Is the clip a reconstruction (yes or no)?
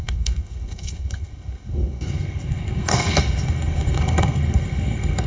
yes